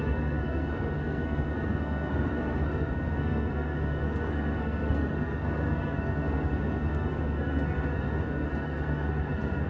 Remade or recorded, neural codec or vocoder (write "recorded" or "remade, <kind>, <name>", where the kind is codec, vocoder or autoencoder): remade, codec, SNAC